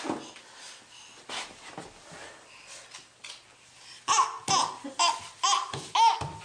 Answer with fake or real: real